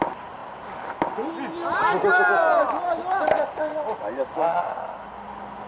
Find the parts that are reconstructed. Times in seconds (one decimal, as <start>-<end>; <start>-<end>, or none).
none